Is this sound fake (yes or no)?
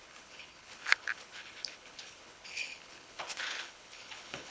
yes